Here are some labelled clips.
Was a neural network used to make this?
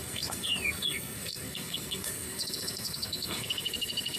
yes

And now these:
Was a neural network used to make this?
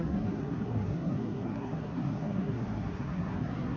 yes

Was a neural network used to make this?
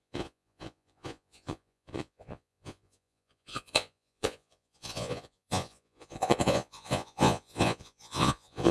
yes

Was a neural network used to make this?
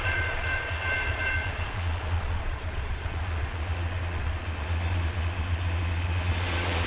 yes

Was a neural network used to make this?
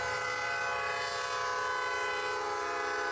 no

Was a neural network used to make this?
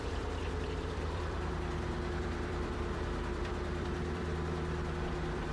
yes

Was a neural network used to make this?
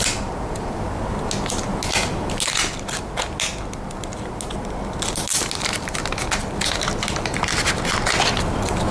no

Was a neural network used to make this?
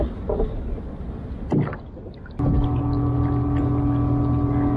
no